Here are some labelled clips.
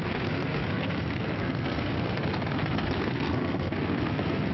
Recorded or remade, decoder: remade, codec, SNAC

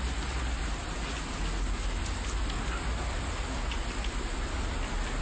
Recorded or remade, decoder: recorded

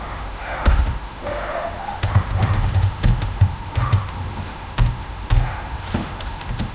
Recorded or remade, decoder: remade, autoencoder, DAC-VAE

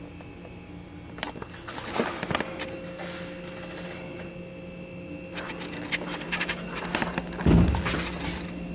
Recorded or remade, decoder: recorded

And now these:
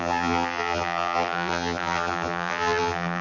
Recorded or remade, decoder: remade, vocoder, BigVGAN v2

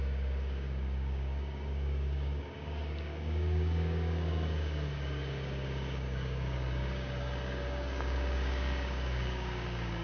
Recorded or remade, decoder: remade, codec, DAC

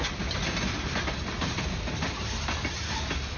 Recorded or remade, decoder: recorded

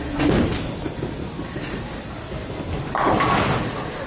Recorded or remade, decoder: recorded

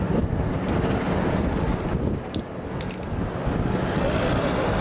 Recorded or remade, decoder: recorded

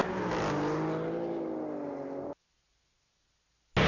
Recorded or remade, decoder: recorded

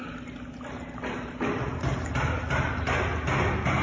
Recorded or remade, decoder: recorded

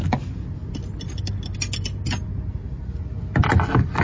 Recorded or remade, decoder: recorded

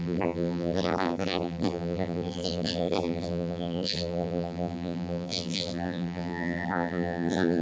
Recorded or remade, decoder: remade, vocoder, BigVGAN v2